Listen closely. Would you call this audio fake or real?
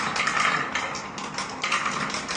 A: real